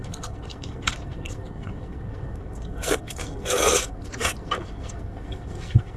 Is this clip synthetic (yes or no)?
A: yes